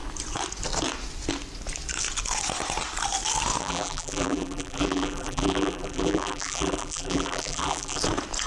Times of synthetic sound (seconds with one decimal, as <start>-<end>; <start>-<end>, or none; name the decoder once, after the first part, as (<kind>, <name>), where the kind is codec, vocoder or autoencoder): 3.6-8.0 (vocoder, BigVGAN v2)

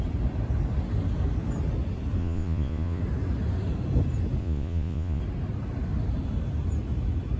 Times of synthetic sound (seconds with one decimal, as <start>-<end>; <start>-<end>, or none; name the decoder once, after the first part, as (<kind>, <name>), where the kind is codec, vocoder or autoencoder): 2.2-3.0 (vocoder, Vocos); 4.4-5.2

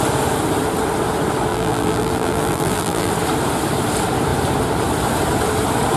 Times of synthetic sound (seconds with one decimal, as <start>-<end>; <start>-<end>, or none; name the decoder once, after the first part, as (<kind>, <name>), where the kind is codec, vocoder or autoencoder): 1.5-3.1 (vocoder, BigVGAN v2)

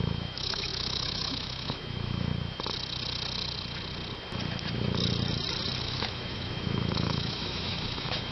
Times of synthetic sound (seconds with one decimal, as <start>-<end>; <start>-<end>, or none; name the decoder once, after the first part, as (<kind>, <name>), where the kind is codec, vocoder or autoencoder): 0.0-2.3 (autoencoder, DAC-VAE); 5.8-8.3

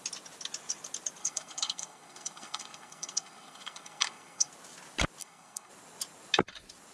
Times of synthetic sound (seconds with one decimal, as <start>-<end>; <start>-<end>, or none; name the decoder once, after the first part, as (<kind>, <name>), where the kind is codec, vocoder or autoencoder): 1.2-4.5 (codec, SNAC); 5.2-5.7

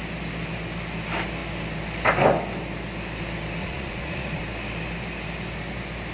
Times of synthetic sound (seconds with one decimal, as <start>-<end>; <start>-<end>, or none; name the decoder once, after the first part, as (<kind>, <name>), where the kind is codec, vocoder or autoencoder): 3.6-4.4 (vocoder, Vocos)